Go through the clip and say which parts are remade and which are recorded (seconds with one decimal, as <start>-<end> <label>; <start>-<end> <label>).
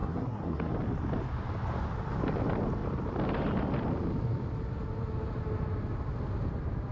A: 0.0-0.7 remade; 0.7-6.9 recorded